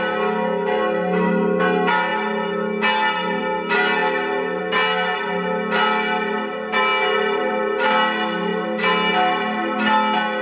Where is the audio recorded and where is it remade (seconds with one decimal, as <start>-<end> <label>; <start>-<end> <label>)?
0.0-10.4 recorded